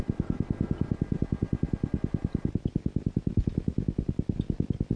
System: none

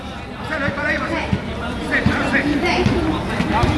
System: none